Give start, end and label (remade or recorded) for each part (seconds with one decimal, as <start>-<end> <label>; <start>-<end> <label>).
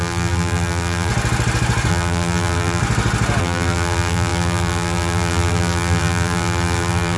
0.0-1.1 remade; 1.1-1.9 recorded; 1.9-2.8 remade; 2.8-3.4 recorded; 3.4-7.2 remade